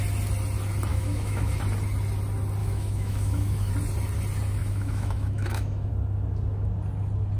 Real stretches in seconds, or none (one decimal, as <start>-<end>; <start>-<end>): 0.0-0.9; 1.6-2.6; 3.7-4.6; 5.9-7.4